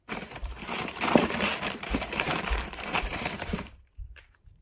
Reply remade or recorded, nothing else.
remade